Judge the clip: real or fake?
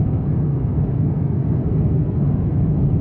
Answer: fake